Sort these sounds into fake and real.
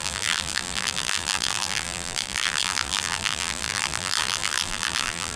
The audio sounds fake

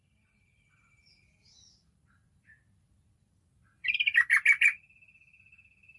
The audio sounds fake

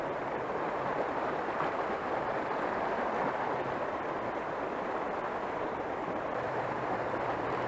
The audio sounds fake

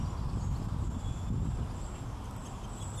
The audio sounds real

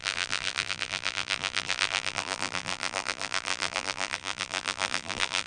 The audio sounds fake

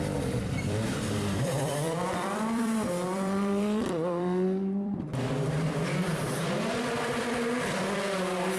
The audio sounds fake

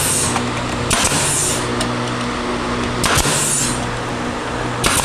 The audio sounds real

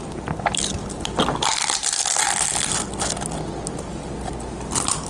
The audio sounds real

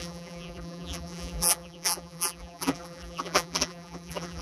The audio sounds fake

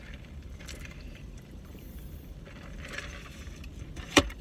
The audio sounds fake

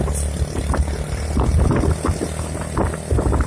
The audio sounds real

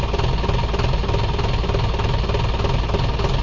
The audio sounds real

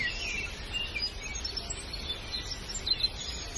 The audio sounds real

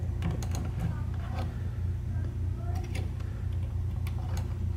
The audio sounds real